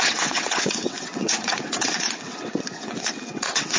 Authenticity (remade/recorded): remade